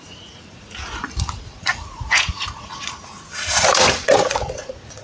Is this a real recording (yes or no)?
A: no